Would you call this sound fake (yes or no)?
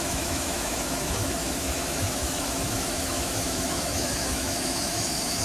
yes